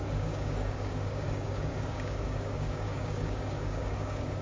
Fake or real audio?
fake